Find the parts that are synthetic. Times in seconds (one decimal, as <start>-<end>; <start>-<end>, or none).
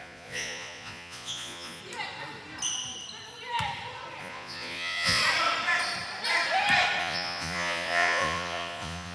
0.0-1.8; 4.2-5.2; 7.0-9.1